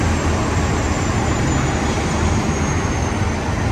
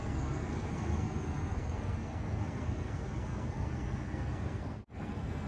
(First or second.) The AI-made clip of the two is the second